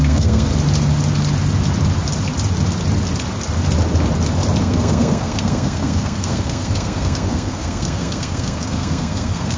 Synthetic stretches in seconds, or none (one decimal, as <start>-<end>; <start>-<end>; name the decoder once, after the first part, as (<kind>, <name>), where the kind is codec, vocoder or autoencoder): 0.0-0.5 (codec, SNAC); 4.6-9.6